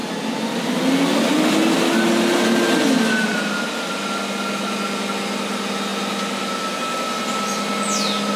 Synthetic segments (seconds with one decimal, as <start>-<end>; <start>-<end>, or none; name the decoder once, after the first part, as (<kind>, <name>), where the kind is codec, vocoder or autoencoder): none